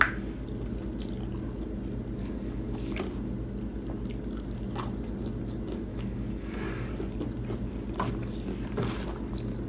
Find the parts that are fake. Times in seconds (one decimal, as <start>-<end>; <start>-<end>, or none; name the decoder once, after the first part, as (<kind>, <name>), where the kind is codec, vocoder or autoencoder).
2.2-3.0 (codec, DAC); 5.9-6.9